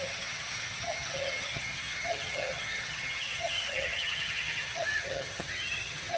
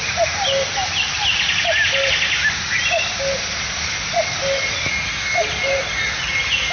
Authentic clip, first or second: second